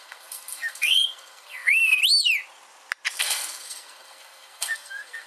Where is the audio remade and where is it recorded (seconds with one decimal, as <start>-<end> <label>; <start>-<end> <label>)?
0.0-2.0 remade; 2.0-3.2 recorded; 3.2-5.3 remade